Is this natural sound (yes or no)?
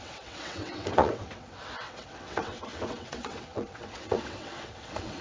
no